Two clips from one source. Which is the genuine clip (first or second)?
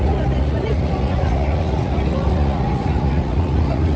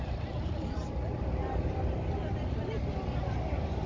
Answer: second